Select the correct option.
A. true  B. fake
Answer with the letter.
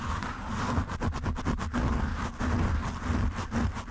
A